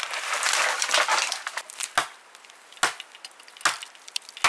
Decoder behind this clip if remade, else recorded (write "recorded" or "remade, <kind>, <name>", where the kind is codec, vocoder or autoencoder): recorded